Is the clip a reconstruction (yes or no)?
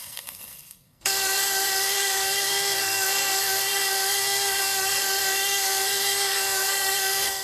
yes